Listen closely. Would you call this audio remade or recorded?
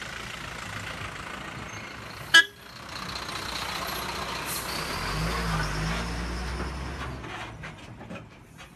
recorded